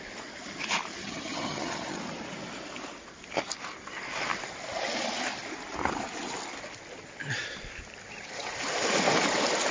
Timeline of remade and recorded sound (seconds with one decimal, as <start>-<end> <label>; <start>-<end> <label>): 0.0-1.0 recorded; 1.0-2.0 remade; 2.0-9.7 recorded